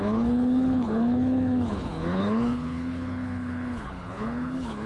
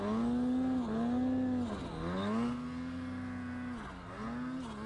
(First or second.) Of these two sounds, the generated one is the first